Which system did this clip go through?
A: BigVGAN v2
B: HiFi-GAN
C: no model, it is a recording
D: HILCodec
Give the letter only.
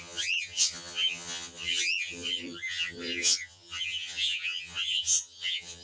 B